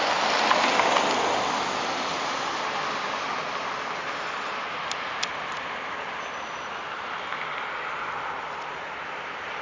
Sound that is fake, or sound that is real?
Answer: real